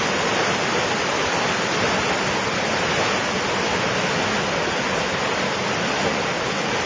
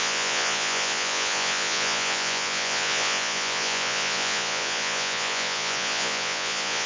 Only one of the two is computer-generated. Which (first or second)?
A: second